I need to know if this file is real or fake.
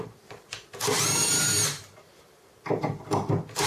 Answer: fake